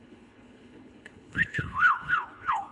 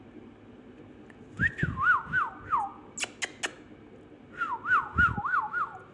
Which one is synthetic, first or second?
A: first